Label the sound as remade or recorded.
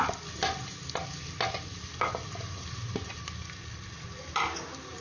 recorded